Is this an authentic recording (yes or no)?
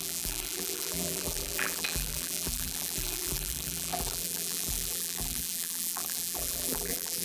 no